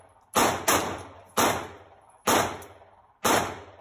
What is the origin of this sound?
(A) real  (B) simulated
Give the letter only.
A